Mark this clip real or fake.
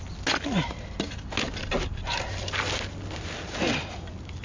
real